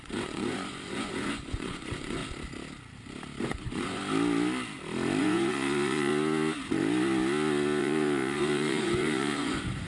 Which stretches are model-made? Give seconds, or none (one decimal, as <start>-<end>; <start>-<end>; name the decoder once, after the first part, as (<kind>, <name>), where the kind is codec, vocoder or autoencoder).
0.0-2.2 (vocoder, Vocos); 3.4-4.0; 5.2-6.1; 7.8-9.9